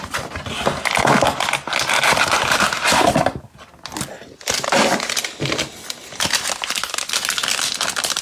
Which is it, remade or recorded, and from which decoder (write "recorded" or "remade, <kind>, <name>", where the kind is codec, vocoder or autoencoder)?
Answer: recorded